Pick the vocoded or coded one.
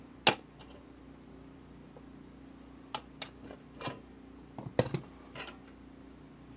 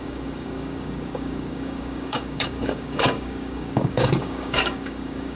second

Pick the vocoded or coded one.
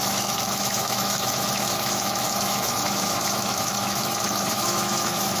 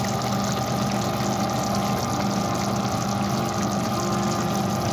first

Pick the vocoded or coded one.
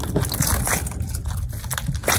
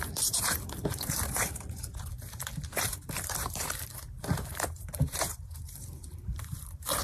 second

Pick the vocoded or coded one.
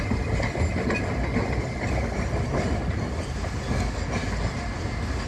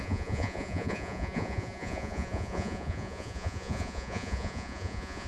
second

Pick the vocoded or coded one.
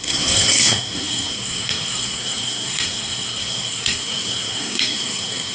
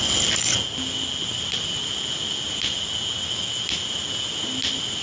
first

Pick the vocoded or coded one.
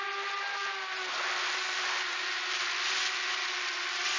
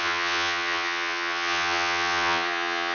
second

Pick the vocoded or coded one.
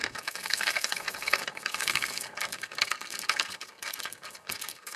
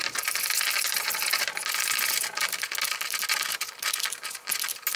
first